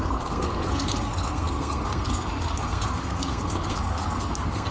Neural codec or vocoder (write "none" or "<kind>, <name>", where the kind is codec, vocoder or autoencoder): codec, SNAC